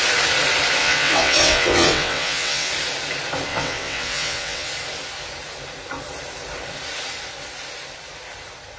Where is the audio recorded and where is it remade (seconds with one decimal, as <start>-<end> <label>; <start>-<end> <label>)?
0.0-0.8 recorded; 0.8-2.7 remade; 2.7-3.5 recorded; 3.5-4.7 remade; 4.7-8.8 recorded